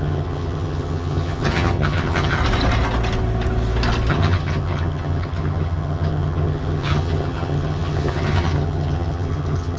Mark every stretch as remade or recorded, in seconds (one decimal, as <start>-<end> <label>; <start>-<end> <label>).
0.0-2.4 remade; 2.4-4.1 recorded; 4.1-9.8 remade